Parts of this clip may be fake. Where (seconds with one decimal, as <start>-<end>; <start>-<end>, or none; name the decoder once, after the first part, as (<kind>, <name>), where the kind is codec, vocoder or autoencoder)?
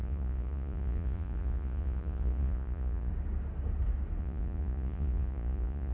0.0-3.1 (vocoder, Vocos); 4.2-5.9